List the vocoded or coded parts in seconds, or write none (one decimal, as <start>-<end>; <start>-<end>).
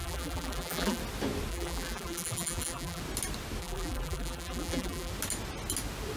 0.0-1.0; 1.5-3.0; 3.6-5.1